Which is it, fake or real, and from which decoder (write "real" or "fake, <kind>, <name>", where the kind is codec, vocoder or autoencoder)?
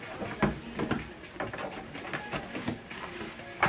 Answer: real